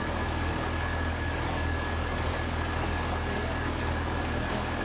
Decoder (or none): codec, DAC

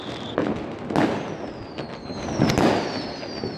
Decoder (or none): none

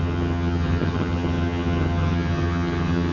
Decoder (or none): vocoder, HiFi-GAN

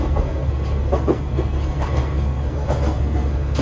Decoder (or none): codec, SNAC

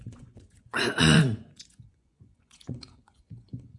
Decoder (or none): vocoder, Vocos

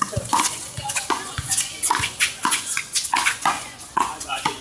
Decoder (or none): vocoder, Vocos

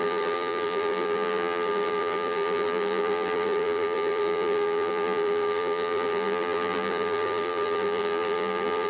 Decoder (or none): vocoder, BigVGAN v2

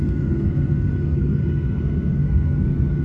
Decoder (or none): codec, SNAC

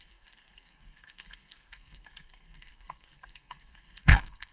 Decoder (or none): codec, SNAC